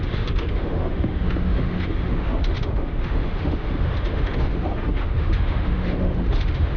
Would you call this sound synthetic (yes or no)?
yes